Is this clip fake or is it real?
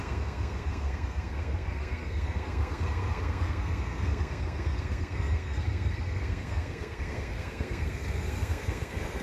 fake